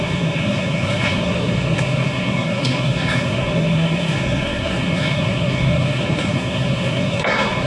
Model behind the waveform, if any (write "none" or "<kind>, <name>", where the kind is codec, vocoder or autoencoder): codec, SNAC